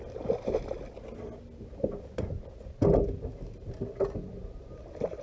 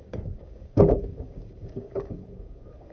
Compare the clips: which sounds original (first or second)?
first